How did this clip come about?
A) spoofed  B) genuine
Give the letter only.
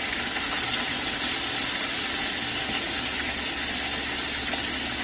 B